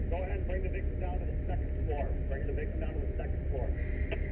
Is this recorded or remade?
recorded